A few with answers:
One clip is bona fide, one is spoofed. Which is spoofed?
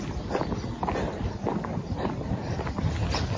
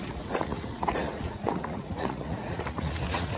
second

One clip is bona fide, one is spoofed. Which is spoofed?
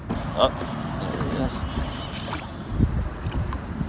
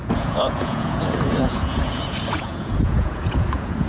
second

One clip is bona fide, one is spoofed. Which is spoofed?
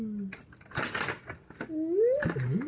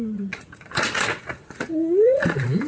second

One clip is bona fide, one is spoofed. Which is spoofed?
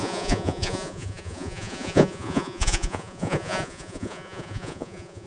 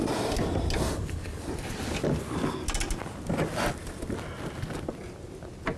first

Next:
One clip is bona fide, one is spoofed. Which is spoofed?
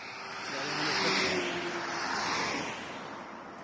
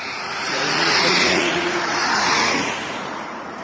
second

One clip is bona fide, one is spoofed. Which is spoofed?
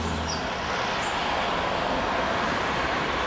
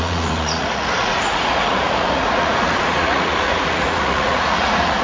second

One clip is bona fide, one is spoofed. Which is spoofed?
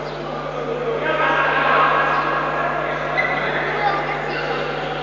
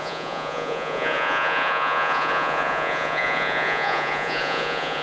second